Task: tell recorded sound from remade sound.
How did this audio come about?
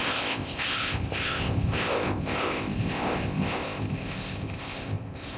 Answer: remade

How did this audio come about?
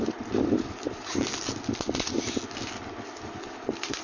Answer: recorded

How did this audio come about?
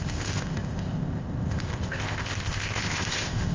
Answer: remade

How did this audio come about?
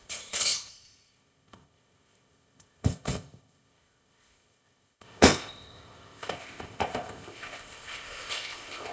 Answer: remade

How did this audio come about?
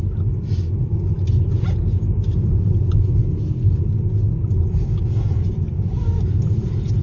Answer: recorded